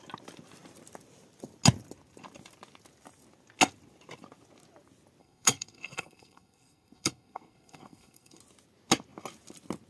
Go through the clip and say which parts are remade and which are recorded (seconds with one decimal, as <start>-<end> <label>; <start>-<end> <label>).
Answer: 0.0-5.2 recorded; 5.2-8.4 remade; 8.4-9.9 recorded